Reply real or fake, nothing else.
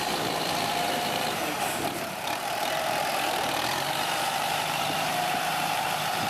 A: fake